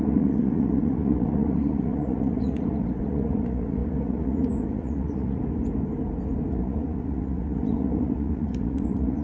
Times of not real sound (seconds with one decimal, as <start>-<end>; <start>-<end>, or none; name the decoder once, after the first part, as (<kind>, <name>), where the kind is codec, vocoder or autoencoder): 0.0-5.4 (vocoder, Vocos); 6.5-9.2